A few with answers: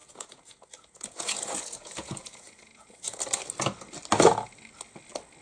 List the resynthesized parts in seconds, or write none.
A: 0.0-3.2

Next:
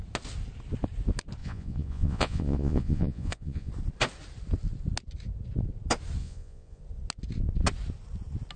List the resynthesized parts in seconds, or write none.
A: 1.4-3.7; 6.2-6.8